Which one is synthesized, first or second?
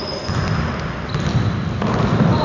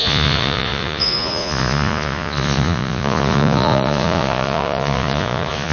second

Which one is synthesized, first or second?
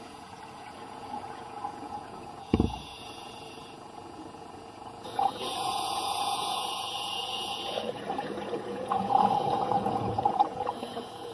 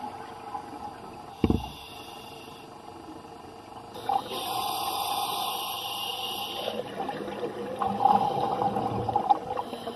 first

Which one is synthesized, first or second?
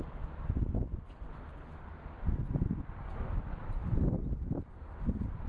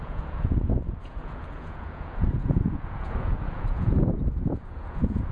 second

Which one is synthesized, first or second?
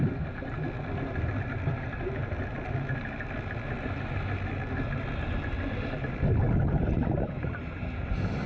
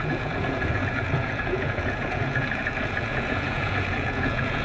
second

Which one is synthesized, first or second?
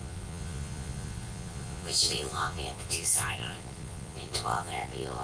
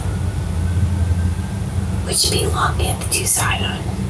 first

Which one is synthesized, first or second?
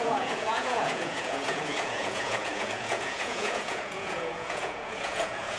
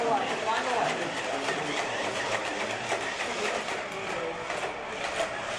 first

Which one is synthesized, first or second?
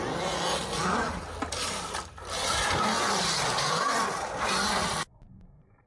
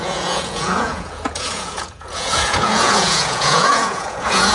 second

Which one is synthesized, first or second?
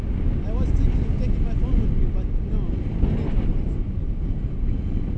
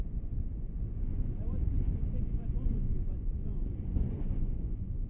second